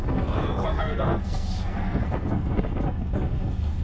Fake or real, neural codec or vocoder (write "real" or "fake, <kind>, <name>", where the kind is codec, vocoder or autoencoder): fake, codec, SNAC